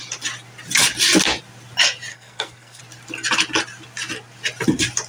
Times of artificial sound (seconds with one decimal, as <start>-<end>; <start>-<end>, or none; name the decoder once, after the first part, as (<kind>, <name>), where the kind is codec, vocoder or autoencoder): 2.1-2.8 (codec, SNAC)